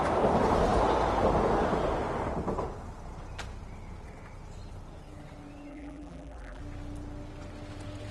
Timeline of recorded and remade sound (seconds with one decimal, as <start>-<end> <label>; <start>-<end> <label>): 0.0-5.7 recorded; 5.7-6.6 remade; 6.6-8.1 recorded